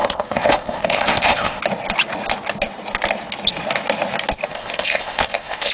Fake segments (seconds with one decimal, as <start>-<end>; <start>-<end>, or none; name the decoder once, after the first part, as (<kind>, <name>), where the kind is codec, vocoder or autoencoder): 0.0-1.6 (codec, ZipCodec); 4.5-5.7